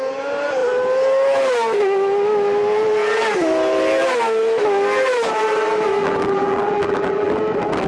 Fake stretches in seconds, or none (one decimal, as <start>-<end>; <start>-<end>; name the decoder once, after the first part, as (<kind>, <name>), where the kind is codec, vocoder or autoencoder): 6.0-7.3 (vocoder, BigVGAN v2)